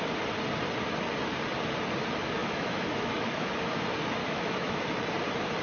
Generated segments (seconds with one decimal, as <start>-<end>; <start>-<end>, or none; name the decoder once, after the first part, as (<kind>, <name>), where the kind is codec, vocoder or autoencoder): 2.4-3.5 (autoencoder, DAC-VAE); 4.2-4.8